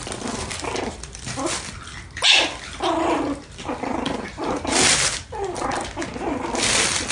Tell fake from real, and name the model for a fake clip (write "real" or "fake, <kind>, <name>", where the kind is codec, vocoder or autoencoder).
real